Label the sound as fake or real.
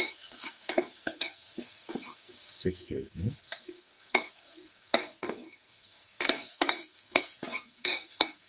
fake